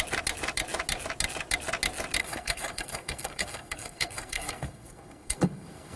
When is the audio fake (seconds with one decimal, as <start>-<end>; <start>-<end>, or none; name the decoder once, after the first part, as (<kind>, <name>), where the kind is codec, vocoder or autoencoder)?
2.2-6.0 (codec, SNAC)